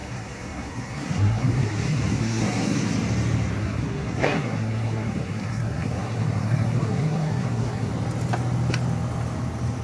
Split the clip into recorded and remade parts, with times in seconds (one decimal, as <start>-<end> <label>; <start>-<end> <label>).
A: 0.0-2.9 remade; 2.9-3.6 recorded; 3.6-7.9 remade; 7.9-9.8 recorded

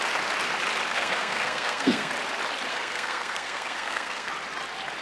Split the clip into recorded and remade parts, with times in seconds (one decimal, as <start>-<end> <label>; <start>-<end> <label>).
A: 0.0-0.9 recorded; 0.9-2.1 remade; 2.1-2.7 recorded; 2.7-4.3 remade; 4.3-5.0 recorded

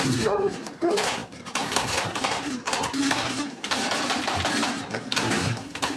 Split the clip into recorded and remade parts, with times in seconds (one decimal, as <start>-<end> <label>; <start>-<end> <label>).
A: 0.0-3.8 remade; 3.8-4.7 recorded; 4.7-6.0 remade